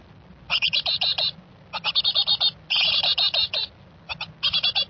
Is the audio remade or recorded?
remade